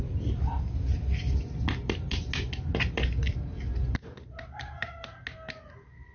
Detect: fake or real real